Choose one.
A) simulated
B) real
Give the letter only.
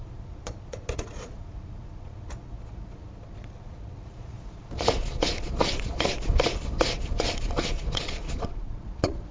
A